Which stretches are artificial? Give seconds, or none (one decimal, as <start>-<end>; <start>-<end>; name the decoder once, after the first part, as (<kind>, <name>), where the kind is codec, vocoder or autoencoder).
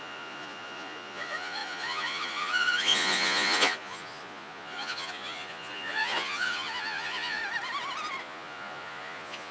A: 0.0-7.4 (vocoder, Vocos); 8.2-9.5